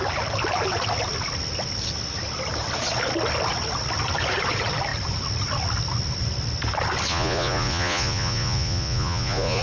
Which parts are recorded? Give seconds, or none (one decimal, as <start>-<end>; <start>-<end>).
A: 0.0-7.1